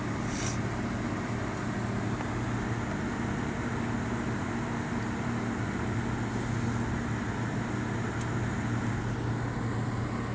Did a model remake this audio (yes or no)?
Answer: no